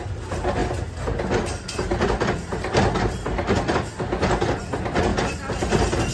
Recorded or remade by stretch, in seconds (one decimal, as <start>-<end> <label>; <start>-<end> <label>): 0.0-5.1 recorded; 5.1-6.1 remade